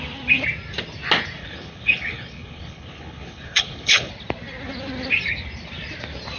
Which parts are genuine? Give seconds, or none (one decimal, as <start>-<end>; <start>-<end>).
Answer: 0.0-1.4; 4.1-6.4